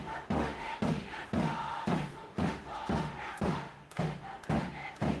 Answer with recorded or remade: remade